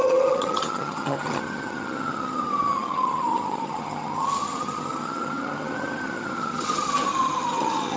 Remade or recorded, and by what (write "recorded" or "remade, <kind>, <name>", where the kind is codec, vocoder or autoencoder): remade, vocoder, HiFi-GAN